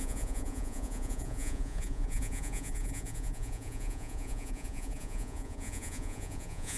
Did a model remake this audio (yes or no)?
yes